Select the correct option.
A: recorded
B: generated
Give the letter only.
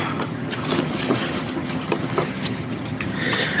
B